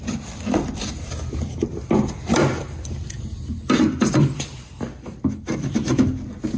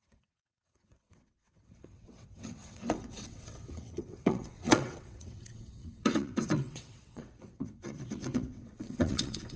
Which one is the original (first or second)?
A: first